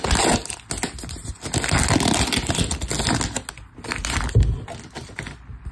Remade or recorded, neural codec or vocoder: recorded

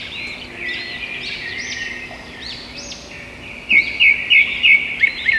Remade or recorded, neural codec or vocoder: recorded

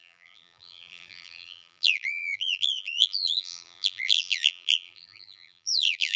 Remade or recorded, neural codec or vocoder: remade, vocoder, BigVGAN v2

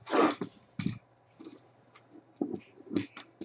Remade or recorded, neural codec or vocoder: remade, vocoder, BigVGAN v2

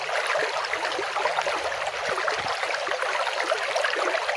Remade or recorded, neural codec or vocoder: recorded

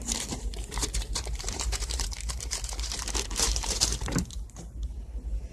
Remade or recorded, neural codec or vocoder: remade, vocoder, BigVGAN v2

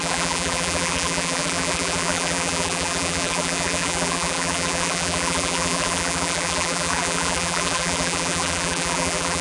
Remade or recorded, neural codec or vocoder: remade, vocoder, BigVGAN v2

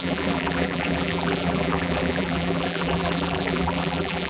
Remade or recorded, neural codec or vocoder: remade, vocoder, BigVGAN v2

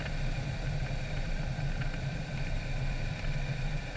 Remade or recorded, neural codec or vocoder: remade, vocoder, BigVGAN v2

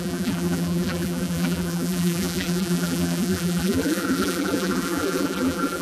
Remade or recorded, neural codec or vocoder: remade, vocoder, BigVGAN v2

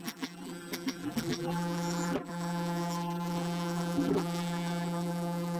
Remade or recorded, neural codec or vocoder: remade, vocoder, BigVGAN v2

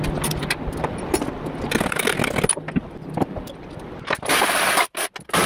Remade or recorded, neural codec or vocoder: recorded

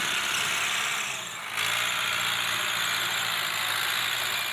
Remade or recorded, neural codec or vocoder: recorded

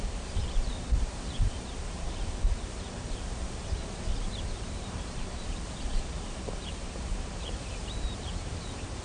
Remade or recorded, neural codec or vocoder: remade, vocoder, BigVGAN v2